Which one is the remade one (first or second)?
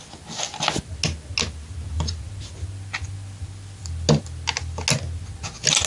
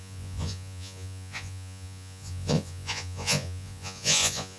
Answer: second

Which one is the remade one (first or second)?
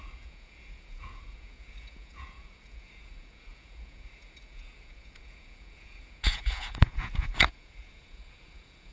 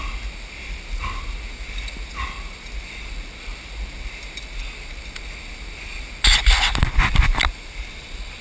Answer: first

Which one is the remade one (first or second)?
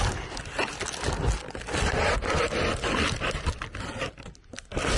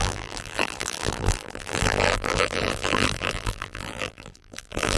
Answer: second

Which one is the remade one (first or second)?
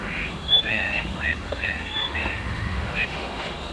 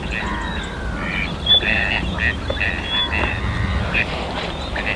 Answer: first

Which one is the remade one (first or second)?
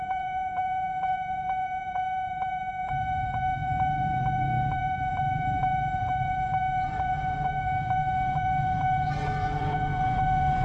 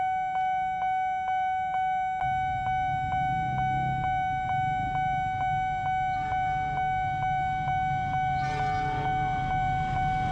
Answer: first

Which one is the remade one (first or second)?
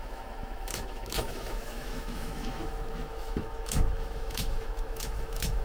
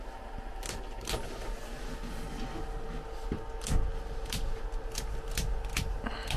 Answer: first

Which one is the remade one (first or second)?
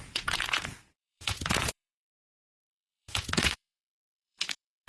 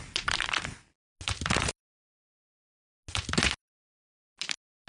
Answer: first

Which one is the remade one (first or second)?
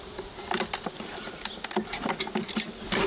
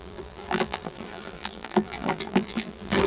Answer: second